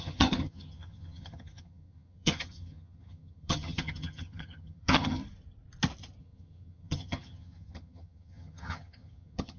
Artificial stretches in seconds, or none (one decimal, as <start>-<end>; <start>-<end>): 0.0-5.2; 6.2-9.6